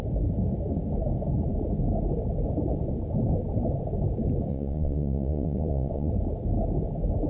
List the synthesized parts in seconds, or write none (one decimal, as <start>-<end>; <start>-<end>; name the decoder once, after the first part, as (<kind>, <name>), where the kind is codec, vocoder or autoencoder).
4.5-6.1 (vocoder, Vocos)